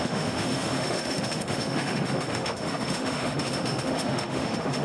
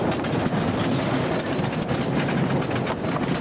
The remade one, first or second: first